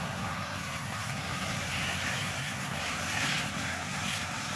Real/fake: fake